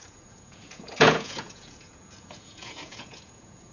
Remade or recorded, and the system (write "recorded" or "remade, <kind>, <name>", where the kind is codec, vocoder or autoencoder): remade, vocoder, Vocos